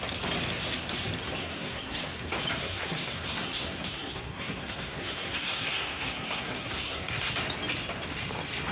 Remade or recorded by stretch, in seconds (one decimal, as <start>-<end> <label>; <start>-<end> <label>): 0.0-1.4 recorded; 1.4-2.0 remade; 2.0-2.6 recorded; 2.6-7.3 remade; 7.3-8.7 recorded